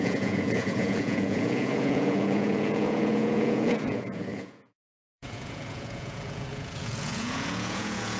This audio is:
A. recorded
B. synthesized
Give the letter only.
B